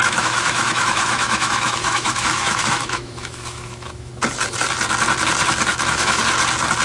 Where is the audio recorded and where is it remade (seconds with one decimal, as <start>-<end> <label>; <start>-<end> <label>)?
0.0-4.1 remade; 4.1-5.7 recorded; 5.7-6.2 remade; 6.2-6.8 recorded

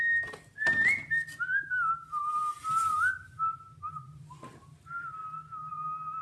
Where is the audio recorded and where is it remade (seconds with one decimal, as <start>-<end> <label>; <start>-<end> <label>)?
0.0-6.2 recorded

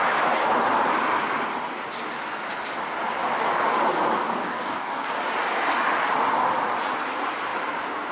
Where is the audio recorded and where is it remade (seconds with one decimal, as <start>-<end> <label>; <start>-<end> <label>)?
0.0-4.4 recorded; 4.4-5.1 remade; 5.1-8.1 recorded

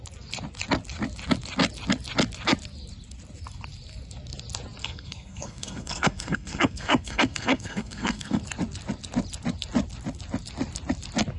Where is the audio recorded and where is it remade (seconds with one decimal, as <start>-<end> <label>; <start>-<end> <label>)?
0.0-4.8 recorded; 4.8-8.4 remade; 8.4-11.4 recorded

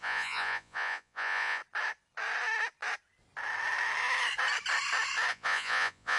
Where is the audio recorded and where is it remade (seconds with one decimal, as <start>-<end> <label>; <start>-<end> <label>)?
0.0-1.6 remade; 1.6-5.3 recorded; 5.3-6.2 remade

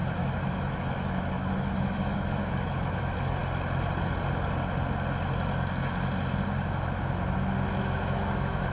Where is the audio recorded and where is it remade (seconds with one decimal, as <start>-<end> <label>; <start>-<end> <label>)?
0.0-3.4 remade; 3.4-7.8 recorded; 7.8-8.7 remade

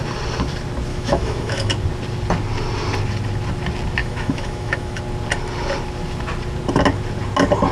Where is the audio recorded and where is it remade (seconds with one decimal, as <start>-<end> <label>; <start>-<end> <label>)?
0.0-0.9 recorded; 0.9-1.7 remade; 1.7-4.0 recorded; 4.0-5.0 remade; 5.0-7.7 recorded